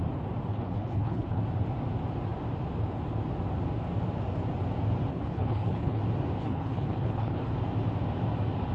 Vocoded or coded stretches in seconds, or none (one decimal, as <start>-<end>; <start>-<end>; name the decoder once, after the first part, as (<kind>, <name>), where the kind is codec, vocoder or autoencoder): 0.5-1.4 (codec, HILCodec); 5.1-6.0; 6.4-7.5